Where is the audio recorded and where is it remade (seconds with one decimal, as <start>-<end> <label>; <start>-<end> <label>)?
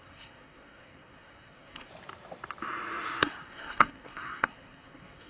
0.0-1.9 remade; 1.9-3.2 recorded; 3.2-5.3 remade